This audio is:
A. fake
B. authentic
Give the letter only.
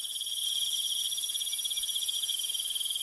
A